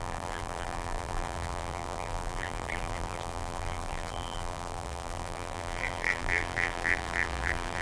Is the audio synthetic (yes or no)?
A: yes